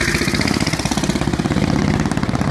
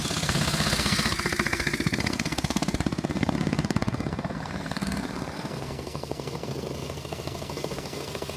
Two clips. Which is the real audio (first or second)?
first